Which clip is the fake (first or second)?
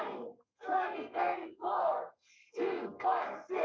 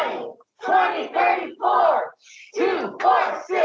first